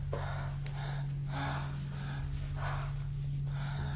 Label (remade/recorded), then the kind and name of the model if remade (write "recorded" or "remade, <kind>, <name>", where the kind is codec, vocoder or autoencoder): recorded